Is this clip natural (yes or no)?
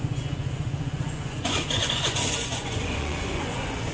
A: no